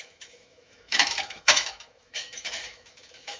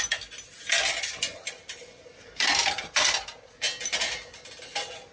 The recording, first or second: second